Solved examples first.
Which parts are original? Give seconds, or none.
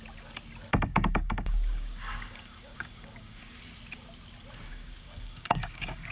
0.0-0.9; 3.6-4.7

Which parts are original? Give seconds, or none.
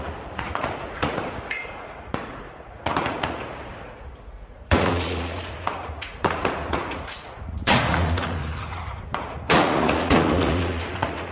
none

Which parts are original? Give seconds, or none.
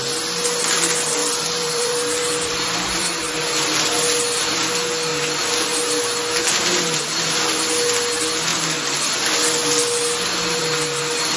0.0-1.2; 3.1-11.4